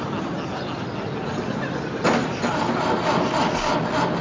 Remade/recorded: recorded